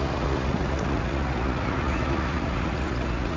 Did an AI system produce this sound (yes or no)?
yes